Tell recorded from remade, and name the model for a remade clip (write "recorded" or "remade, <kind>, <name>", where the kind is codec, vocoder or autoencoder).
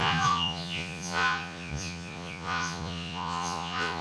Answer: remade, vocoder, Vocos